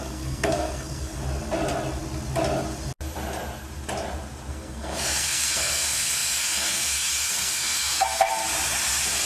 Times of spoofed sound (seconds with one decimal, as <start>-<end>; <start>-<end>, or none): 0.0-1.2; 4.5-8.4